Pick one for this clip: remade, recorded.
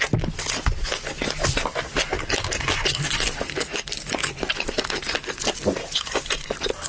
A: recorded